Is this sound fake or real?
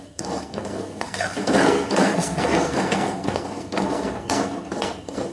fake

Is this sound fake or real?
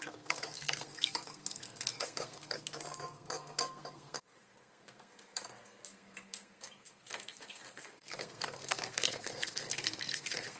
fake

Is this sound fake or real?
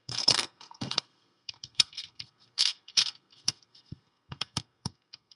fake